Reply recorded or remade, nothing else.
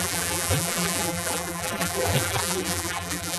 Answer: remade